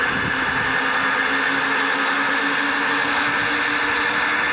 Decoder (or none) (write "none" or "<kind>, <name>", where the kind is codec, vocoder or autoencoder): none